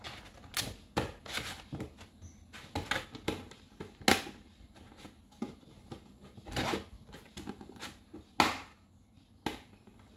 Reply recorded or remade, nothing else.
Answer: recorded